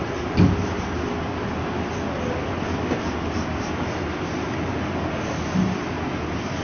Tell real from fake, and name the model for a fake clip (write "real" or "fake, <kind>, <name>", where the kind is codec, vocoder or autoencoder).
real